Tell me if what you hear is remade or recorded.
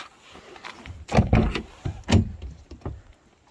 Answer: recorded